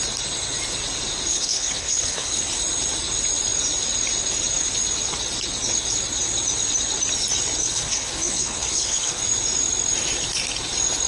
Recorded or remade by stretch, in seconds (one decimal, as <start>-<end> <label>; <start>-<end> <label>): 0.0-1.3 recorded; 1.3-2.4 remade; 2.4-7.6 recorded; 7.6-9.2 remade; 9.2-11.1 recorded